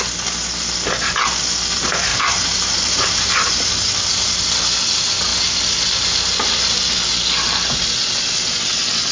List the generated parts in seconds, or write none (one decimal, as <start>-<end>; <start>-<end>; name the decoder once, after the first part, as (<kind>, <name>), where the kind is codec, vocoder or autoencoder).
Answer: 2.1-3.7 (vocoder, BigVGAN v2)